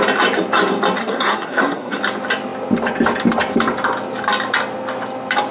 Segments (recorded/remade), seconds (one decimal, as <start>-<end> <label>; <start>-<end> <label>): 0.0-1.0 recorded; 1.0-2.0 remade; 2.0-5.5 recorded